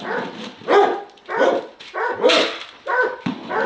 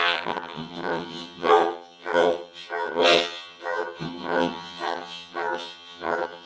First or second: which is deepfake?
second